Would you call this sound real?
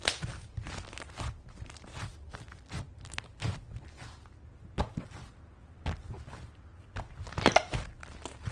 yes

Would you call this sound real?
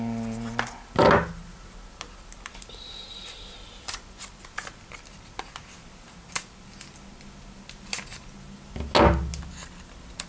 yes